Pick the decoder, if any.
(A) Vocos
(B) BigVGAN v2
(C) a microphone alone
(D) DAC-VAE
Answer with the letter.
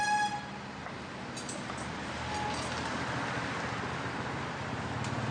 C